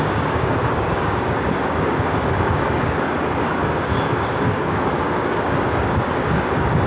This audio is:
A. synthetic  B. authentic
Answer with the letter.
A